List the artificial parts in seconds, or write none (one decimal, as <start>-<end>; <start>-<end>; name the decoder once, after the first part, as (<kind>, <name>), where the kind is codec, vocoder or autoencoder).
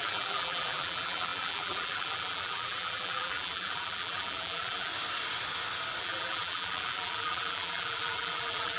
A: 0.0-4.9 (vocoder, BigVGAN v2); 6.0-8.8